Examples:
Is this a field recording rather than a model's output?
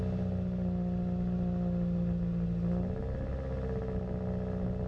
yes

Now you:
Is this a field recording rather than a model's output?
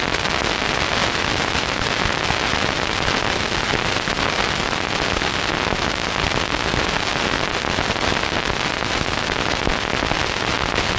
yes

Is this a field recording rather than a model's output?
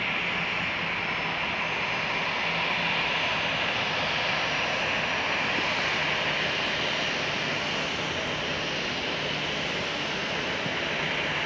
yes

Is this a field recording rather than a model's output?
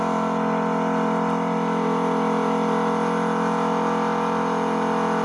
yes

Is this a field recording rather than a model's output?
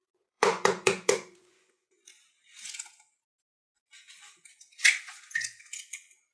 no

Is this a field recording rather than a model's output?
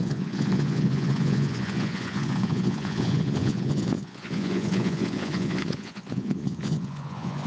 no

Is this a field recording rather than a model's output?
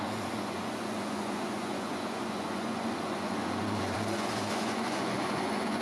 no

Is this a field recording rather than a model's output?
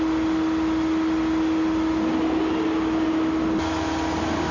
yes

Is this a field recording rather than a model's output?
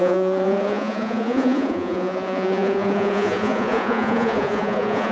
no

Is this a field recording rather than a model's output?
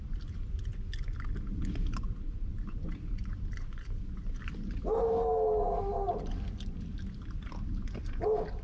yes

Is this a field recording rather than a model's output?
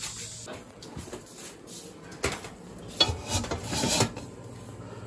yes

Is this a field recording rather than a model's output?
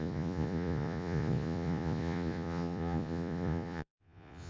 no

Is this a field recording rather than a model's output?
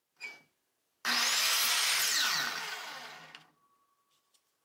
yes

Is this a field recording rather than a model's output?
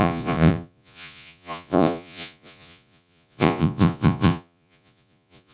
no